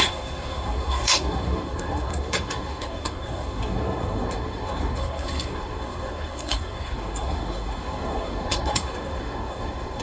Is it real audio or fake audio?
fake